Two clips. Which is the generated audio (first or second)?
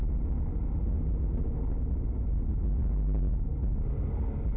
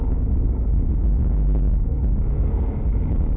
second